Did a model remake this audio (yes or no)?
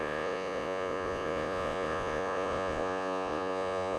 yes